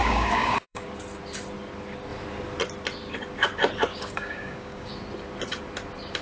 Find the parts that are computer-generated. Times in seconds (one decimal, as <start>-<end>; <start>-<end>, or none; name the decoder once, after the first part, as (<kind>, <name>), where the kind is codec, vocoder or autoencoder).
0.0-0.9 (codec, DAC); 3.9-4.9